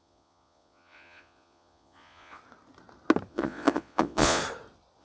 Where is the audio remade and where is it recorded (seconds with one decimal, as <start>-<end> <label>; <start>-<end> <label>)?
0.0-2.4 remade; 2.4-3.3 recorded; 3.3-4.4 remade; 4.4-5.0 recorded